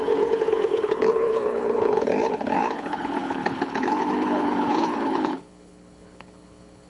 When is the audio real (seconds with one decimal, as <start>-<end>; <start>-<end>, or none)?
none